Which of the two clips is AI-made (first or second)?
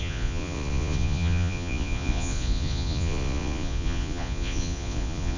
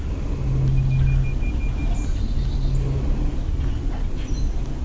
first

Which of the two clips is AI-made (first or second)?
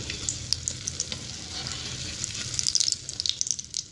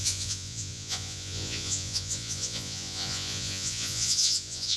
second